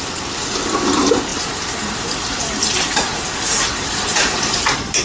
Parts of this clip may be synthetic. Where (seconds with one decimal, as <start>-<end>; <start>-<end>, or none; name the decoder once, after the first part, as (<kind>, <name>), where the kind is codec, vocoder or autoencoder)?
none

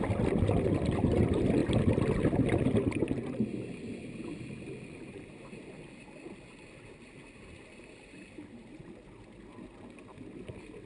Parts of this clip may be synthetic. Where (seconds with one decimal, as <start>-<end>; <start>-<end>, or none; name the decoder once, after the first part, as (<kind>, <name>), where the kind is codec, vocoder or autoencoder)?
1.6-2.5 (vocoder, BigVGAN v2)

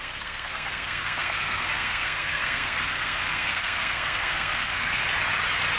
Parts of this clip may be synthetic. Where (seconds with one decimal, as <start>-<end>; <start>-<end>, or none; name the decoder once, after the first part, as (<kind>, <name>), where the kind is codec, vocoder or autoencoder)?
0.0-5.0 (codec, SNAC)

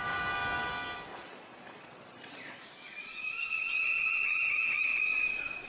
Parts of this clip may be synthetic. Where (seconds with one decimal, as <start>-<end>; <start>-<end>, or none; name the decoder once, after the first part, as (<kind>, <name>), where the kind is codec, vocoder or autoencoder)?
1.1-4.5 (vocoder, Vocos); 4.9-5.7